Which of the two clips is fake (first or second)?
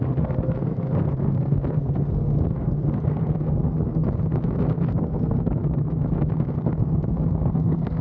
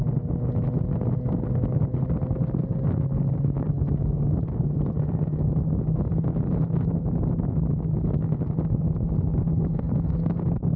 first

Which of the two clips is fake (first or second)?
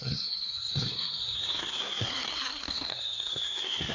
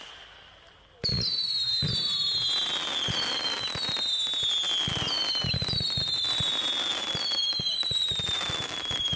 first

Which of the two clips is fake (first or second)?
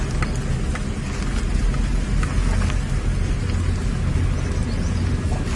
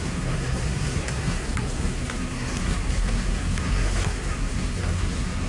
second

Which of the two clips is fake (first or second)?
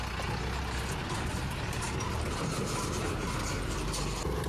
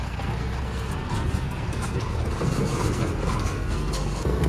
second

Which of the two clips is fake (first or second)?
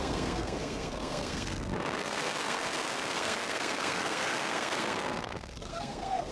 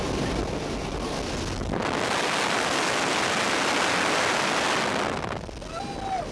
first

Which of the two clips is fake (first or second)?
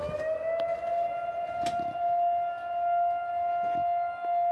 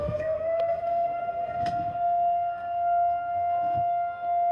second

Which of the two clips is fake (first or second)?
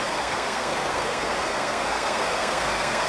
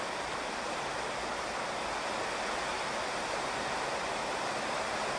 first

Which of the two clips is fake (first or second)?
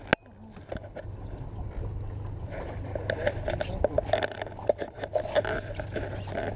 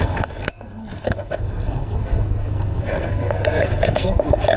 second